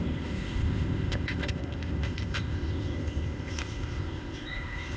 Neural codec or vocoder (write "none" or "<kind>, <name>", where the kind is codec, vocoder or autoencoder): codec, ZipCodec